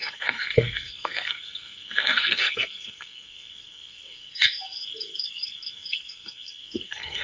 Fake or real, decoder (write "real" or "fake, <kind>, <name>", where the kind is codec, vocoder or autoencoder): fake, codec, SNAC